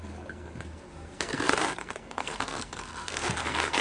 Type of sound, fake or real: fake